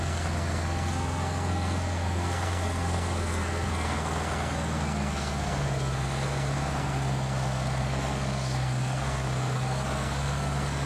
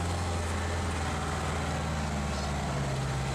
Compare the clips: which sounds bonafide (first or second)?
second